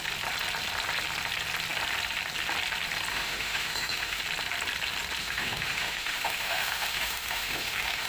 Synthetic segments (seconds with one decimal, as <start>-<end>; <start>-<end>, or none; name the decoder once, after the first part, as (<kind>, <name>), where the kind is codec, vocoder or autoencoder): 3.1-4.2 (autoencoder, DAC-VAE); 5.2-8.1